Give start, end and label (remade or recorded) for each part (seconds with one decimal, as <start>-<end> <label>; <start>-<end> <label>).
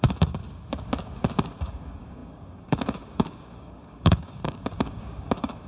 0.0-0.4 remade; 0.4-1.6 recorded; 1.6-5.7 remade